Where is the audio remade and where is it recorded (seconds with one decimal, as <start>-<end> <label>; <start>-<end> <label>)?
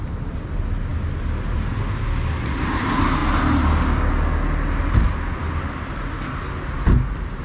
0.0-7.4 recorded